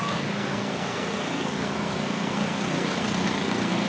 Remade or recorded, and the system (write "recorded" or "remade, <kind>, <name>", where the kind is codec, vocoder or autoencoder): remade, codec, SNAC